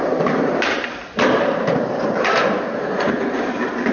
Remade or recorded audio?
remade